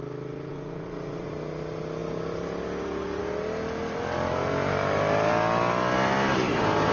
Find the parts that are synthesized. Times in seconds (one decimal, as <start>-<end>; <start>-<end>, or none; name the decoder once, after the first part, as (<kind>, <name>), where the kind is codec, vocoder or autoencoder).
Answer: 0.5-1.3 (vocoder, Vocos)